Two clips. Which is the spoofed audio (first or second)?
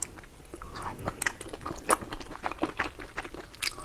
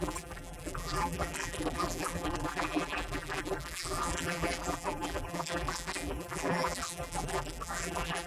second